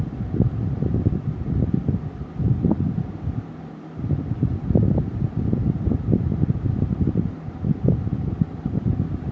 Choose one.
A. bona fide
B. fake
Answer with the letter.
B